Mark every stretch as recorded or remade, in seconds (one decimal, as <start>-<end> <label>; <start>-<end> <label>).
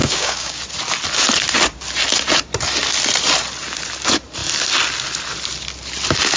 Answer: 0.0-0.6 remade; 0.6-6.4 recorded